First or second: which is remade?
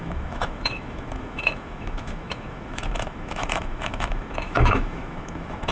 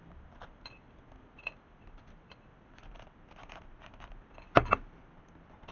first